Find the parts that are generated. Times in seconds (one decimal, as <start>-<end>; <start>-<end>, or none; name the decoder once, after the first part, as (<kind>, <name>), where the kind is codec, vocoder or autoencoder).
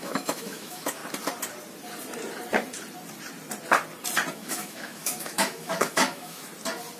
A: 0.0-1.0 (autoencoder, DAC-VAE); 4.3-6.5